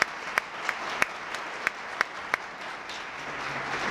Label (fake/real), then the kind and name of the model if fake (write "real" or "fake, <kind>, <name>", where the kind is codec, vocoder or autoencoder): real